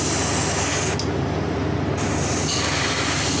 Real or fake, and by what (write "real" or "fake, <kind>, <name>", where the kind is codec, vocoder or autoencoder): real